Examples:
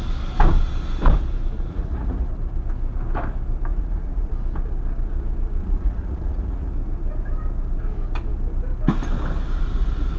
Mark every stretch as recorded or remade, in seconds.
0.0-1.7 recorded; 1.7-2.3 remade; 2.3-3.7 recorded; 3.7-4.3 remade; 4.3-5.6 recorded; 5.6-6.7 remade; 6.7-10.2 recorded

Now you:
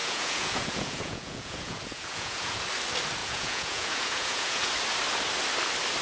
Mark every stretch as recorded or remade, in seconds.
0.0-2.6 remade; 2.6-3.2 recorded; 3.2-4.7 remade; 4.7-6.0 recorded

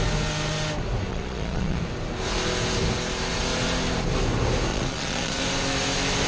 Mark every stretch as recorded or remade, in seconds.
0.0-1.1 recorded; 1.1-1.8 remade; 1.8-4.7 recorded; 4.7-5.4 remade; 5.4-6.3 recorded

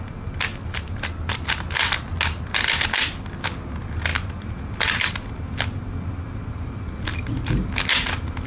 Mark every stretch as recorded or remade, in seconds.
0.0-8.5 recorded